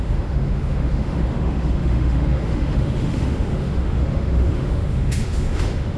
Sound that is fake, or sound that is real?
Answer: fake